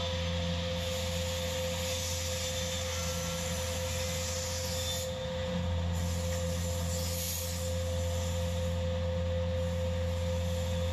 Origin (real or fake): real